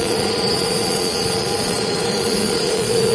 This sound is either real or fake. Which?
fake